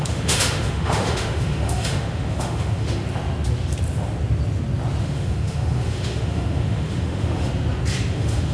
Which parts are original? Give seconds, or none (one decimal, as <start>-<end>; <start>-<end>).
3.0-5.0; 7.5-8.1